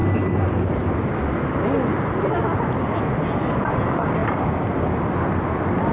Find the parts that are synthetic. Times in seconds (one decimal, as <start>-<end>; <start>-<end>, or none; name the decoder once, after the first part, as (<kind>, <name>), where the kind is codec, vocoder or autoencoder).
none